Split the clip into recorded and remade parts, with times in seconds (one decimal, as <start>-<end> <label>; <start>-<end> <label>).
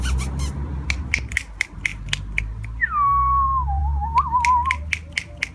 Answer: 0.0-5.5 recorded